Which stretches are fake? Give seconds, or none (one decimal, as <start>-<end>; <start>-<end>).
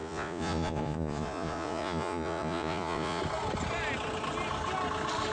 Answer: 0.0-3.2